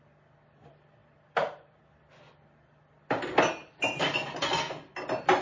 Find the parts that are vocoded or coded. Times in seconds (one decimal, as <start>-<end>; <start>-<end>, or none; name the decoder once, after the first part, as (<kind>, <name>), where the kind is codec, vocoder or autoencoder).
1.0-1.9 (vocoder, BigVGAN v2); 3.6-4.1